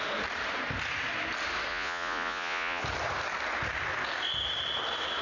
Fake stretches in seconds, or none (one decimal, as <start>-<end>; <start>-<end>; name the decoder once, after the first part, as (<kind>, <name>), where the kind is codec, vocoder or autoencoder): 1.7-2.8 (vocoder, Vocos)